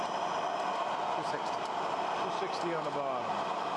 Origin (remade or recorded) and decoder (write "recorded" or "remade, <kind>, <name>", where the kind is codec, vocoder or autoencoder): recorded